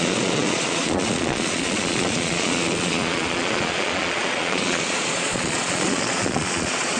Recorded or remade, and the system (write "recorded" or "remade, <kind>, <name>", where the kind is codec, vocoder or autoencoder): remade, vocoder, Vocos